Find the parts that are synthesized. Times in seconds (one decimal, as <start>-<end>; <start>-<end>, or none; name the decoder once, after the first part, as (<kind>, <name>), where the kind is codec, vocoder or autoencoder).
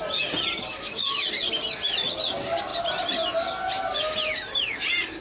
0.7-1.2 (autoencoder, DAC-VAE)